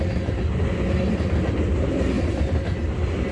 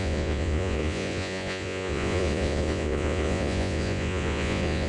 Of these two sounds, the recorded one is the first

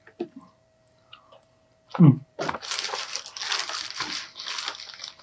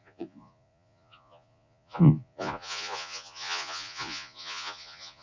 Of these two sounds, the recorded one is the first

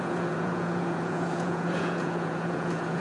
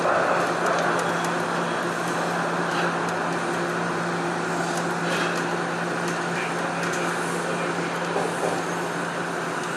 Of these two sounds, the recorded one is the second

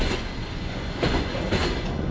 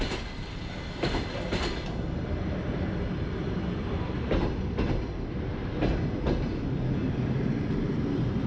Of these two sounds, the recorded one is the second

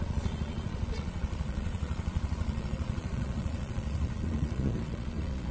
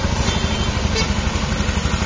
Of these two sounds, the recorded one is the second